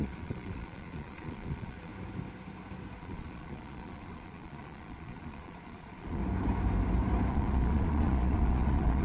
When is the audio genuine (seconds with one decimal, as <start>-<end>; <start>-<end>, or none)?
1.9-3.0; 6.2-7.3